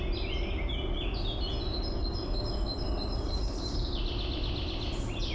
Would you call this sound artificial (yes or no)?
no